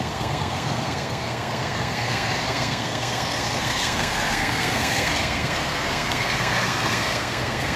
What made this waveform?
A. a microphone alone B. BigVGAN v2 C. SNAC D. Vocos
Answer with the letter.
C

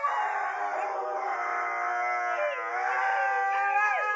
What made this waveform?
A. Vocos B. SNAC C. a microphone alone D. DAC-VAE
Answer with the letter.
C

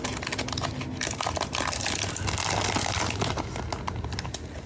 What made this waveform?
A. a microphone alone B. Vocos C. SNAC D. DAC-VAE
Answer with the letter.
A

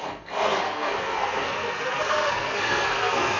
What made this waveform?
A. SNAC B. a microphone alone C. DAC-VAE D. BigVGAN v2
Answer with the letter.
A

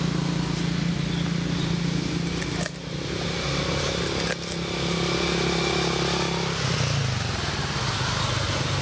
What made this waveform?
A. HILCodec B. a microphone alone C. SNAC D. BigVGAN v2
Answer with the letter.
B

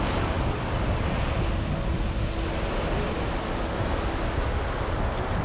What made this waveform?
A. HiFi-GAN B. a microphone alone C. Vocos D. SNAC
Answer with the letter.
B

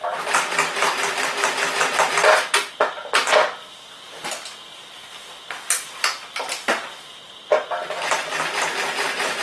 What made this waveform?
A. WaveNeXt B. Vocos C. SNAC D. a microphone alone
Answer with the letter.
D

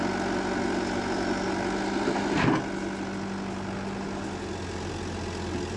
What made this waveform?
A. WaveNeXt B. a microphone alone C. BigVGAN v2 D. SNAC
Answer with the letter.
B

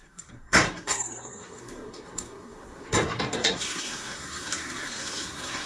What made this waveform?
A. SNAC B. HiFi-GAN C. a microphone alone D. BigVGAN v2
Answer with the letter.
A